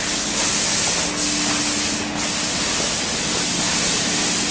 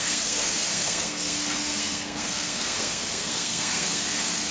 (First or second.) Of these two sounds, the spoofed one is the second